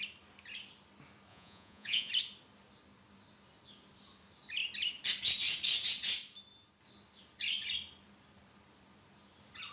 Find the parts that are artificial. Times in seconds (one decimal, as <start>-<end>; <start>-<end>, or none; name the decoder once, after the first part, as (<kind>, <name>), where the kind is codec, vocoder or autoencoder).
1.3-2.1 (vocoder, Vocos)